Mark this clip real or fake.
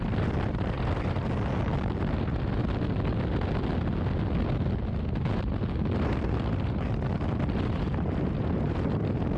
real